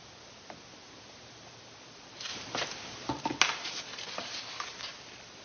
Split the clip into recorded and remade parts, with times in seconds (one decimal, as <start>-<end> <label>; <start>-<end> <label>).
0.0-5.4 recorded